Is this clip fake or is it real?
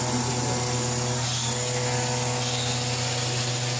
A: real